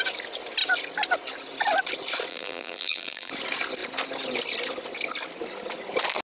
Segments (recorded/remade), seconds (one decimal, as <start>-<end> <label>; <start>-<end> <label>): 0.0-2.3 recorded; 2.3-3.3 remade; 3.3-6.2 recorded